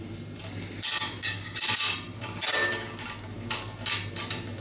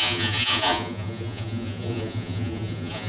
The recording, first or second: first